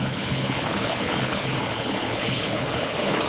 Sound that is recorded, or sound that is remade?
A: remade